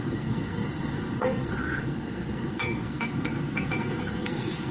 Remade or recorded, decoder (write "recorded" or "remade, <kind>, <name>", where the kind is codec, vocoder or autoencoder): remade, codec, SNAC